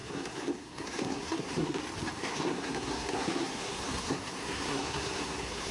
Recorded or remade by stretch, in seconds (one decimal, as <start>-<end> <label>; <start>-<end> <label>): 0.0-1.8 remade; 1.8-2.2 recorded; 2.2-5.7 remade